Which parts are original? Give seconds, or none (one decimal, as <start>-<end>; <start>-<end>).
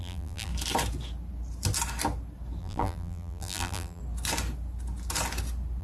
0.5-2.6; 4.0-5.8